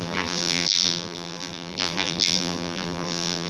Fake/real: fake